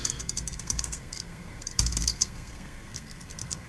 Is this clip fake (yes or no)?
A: yes